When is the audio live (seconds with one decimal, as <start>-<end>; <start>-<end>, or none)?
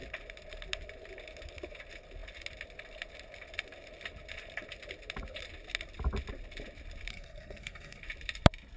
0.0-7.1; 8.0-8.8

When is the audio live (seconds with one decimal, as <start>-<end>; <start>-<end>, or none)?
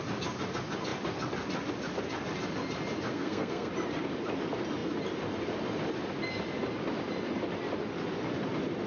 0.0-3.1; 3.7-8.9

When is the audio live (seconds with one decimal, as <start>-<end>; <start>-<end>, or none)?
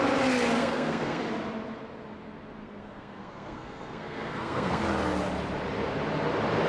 0.0-0.6; 1.2-2.6; 4.8-6.7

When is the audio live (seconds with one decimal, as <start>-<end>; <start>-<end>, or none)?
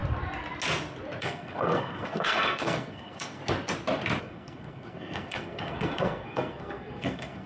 0.0-1.2; 3.4-4.2